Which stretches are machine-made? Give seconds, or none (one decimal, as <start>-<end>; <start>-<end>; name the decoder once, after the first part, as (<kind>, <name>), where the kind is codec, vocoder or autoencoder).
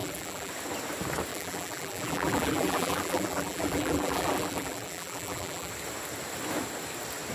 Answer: 0.0-0.5 (vocoder, BigVGAN v2); 1.3-5.7